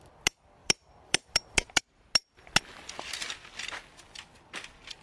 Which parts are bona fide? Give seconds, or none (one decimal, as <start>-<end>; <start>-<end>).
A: 0.0-0.6; 1.8-5.0